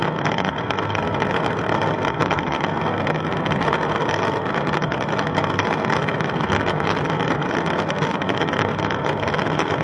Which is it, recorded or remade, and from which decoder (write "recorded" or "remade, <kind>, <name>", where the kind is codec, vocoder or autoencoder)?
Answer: remade, codec, SNAC